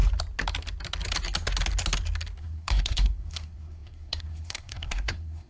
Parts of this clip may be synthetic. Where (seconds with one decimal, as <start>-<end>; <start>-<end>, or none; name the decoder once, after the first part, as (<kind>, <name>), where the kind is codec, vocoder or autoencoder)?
2.4-5.5 (codec, SNAC)